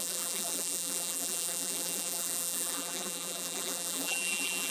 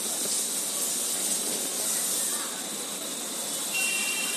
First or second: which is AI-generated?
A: first